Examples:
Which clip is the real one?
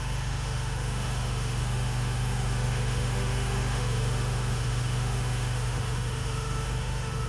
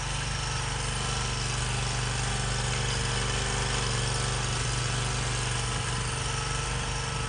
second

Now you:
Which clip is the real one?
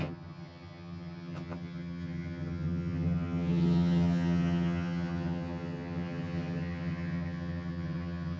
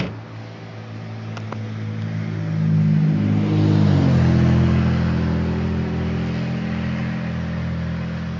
second